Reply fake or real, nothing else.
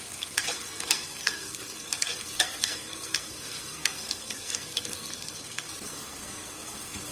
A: fake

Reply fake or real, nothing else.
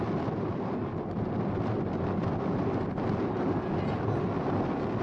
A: real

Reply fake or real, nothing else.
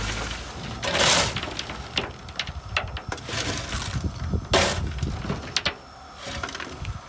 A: real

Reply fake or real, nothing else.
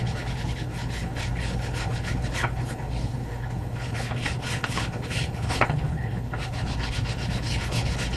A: fake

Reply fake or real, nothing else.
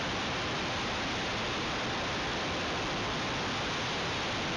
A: real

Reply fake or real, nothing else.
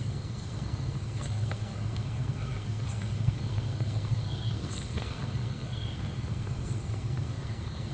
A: fake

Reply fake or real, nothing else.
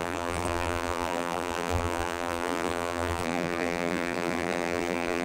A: fake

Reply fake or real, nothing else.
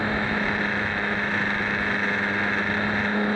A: fake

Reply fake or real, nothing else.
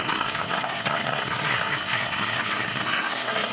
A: fake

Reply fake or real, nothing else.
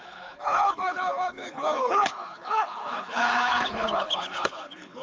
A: fake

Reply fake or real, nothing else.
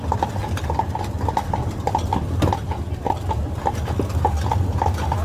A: real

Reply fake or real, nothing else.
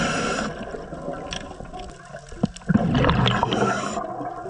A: real